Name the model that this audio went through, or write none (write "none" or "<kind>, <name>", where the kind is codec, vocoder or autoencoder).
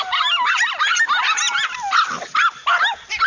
none